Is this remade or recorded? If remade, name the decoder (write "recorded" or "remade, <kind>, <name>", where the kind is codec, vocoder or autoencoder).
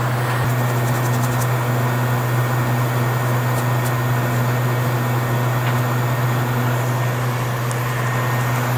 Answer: recorded